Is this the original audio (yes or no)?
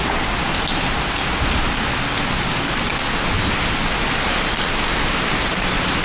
yes